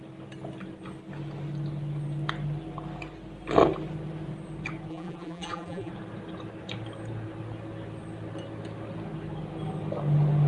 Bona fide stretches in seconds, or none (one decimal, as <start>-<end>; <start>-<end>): 0.0-4.9; 5.9-10.5